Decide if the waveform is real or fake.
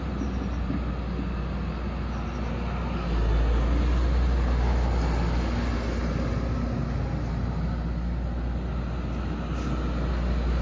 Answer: real